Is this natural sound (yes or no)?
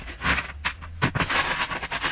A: yes